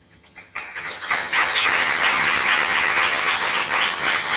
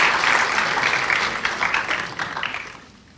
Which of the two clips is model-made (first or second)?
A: first